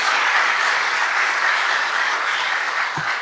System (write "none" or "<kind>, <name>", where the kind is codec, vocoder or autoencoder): codec, DAC